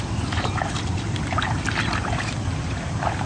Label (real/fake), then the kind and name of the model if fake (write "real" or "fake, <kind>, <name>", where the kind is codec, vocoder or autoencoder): real